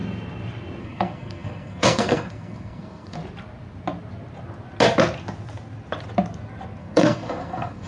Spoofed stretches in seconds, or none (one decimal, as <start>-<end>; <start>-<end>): 0.8-3.2; 6.8-7.9